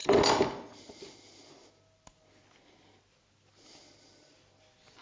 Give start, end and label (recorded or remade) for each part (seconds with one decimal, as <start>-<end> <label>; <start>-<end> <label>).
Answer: 0.0-5.0 recorded